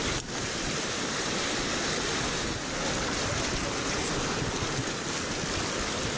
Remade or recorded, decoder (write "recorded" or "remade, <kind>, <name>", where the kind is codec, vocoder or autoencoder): recorded